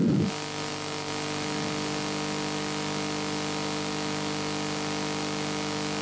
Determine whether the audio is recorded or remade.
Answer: recorded